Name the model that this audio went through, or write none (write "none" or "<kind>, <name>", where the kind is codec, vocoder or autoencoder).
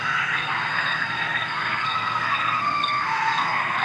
codec, SNAC